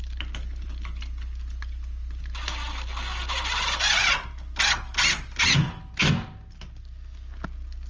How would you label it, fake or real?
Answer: real